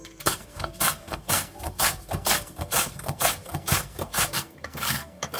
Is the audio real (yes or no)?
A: no